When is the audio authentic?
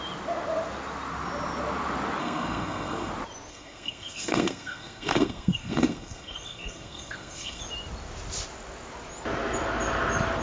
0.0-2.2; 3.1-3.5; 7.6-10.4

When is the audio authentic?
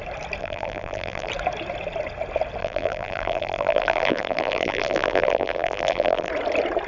0.0-0.4; 1.3-2.6; 6.3-6.9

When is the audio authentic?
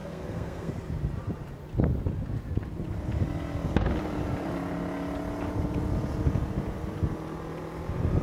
0.7-8.2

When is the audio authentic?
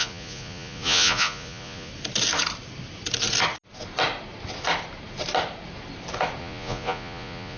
1.9-6.4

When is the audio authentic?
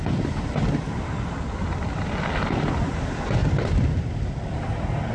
none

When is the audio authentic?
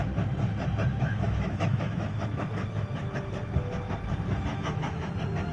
0.0-0.9; 2.5-4.5; 5.1-5.5